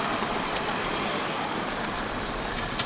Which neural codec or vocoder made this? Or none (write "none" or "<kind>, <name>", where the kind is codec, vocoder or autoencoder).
none